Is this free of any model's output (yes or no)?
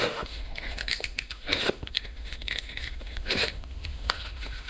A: no